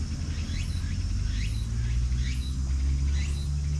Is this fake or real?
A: real